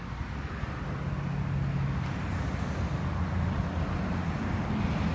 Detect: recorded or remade recorded